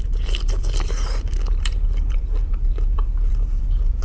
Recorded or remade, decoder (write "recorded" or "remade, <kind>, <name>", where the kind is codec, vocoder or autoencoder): remade, vocoder, BigVGAN v2